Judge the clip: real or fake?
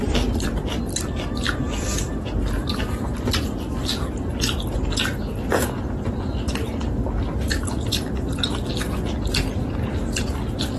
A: real